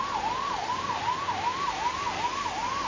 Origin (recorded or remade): recorded